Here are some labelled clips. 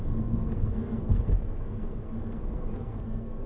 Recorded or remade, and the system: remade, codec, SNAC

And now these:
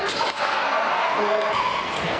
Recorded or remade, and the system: remade, codec, SNAC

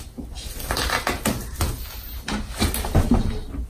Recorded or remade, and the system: recorded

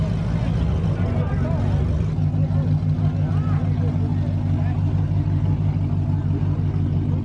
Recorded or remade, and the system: recorded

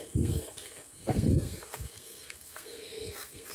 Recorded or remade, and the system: remade, codec, SNAC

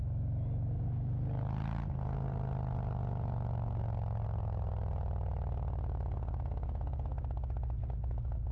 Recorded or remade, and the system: recorded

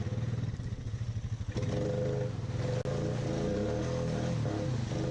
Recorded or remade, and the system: recorded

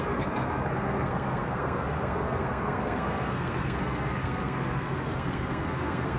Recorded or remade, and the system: remade, codec, SNAC